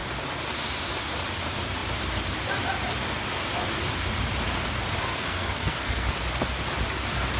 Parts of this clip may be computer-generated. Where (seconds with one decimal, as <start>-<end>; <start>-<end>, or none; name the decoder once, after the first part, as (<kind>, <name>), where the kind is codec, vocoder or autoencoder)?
5.1-6.1 (codec, SNAC)